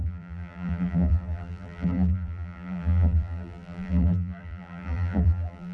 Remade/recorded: remade